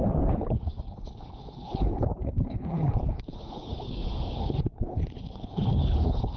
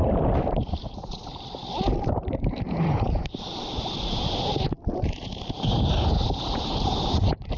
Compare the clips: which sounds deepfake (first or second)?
first